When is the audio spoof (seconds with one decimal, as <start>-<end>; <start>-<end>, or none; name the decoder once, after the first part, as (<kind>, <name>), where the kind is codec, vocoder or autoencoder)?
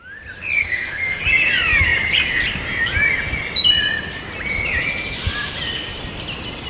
0.6-1.2 (codec, SNAC)